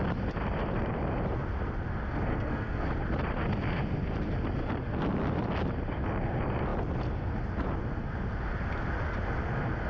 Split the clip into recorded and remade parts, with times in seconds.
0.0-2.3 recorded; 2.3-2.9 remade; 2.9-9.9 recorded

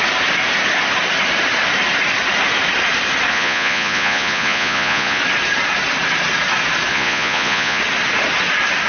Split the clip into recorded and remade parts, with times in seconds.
0.0-3.3 recorded; 3.3-5.2 remade; 5.2-6.9 recorded; 6.9-7.8 remade; 7.8-8.9 recorded

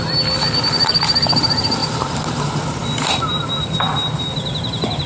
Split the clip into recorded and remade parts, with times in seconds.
0.0-1.8 recorded; 1.8-2.3 remade; 2.3-5.1 recorded

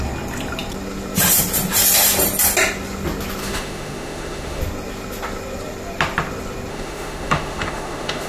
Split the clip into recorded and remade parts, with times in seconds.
0.0-3.4 recorded; 3.4-4.6 remade; 4.6-6.7 recorded; 6.7-8.3 remade

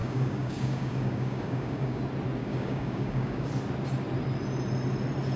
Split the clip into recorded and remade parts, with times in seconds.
0.0-2.0 remade; 2.0-2.4 recorded; 2.4-3.5 remade; 3.5-5.4 recorded

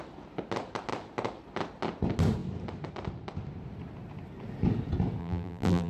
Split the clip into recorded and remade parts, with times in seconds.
0.0-5.2 recorded; 5.2-5.9 remade